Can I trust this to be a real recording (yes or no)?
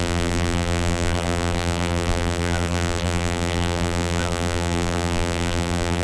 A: no